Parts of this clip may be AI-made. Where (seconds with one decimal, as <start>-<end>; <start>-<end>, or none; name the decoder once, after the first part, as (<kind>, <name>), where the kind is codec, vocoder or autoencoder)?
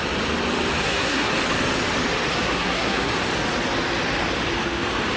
0.8-1.3 (codec, SNAC); 2.3-3.1